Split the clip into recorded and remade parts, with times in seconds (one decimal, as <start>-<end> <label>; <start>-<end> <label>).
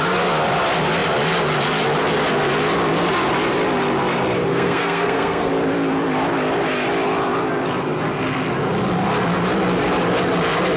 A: 0.0-4.5 recorded; 4.5-5.5 remade; 5.5-10.8 recorded